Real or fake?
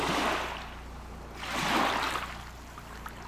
real